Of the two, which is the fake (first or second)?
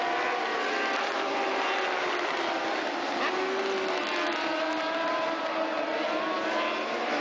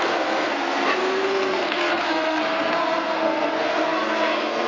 second